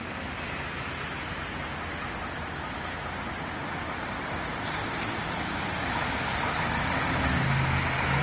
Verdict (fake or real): real